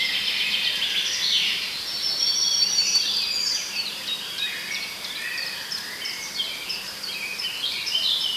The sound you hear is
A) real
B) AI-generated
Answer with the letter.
B